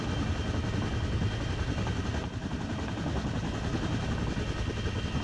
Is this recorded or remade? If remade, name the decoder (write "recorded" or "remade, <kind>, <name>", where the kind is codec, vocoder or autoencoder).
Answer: recorded